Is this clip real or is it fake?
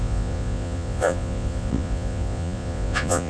fake